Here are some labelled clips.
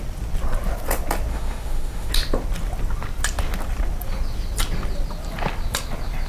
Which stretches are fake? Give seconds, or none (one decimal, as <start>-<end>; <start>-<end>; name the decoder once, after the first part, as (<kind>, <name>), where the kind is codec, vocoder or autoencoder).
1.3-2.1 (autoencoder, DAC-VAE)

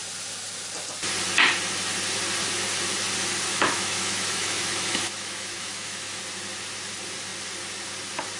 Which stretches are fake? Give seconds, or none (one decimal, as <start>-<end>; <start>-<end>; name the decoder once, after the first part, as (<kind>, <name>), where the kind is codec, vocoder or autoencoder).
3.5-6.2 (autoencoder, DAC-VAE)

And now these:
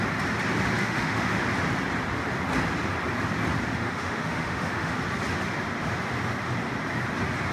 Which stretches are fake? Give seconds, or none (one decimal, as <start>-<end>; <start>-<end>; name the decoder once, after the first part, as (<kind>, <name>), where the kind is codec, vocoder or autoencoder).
0.8-1.4 (autoencoder, DAC-VAE); 3.7-4.9

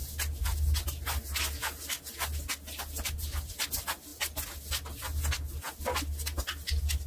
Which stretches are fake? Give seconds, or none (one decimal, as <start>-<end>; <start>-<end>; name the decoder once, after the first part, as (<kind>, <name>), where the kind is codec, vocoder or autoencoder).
none

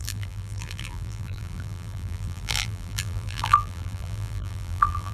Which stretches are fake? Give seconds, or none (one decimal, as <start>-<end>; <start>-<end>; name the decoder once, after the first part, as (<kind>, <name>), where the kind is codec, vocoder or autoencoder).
0.0-5.1 (vocoder, BigVGAN v2)